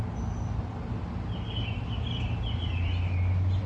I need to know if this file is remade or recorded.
recorded